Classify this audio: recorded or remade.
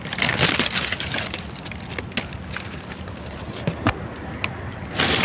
recorded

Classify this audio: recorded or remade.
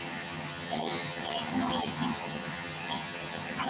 remade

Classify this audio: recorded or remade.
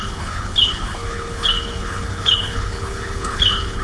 remade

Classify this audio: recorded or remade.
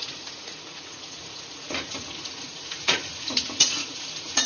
remade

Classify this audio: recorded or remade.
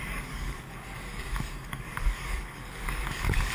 remade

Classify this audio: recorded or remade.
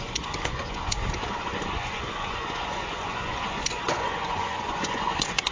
remade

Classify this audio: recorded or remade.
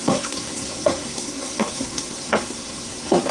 remade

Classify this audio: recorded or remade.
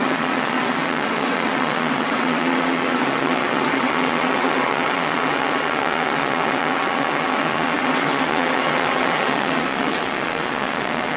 remade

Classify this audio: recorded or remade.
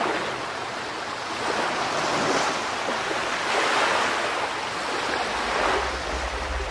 recorded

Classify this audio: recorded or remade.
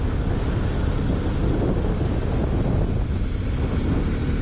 recorded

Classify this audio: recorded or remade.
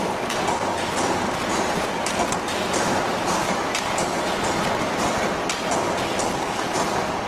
recorded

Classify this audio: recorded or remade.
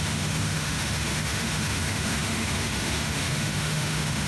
remade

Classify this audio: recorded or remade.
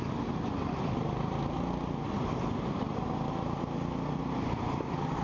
recorded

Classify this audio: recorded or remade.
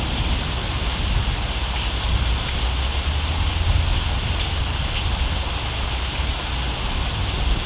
recorded